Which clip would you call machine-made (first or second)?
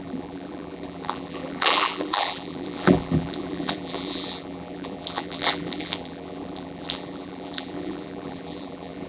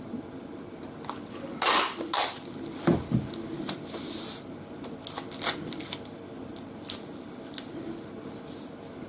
first